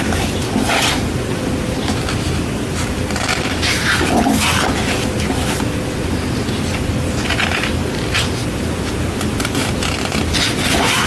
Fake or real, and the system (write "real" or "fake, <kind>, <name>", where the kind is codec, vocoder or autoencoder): real